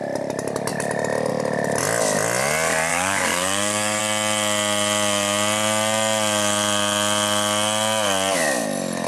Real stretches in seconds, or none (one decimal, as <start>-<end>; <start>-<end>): 0.0-2.9; 4.0-9.1